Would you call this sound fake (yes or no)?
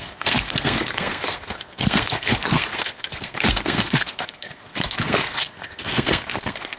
yes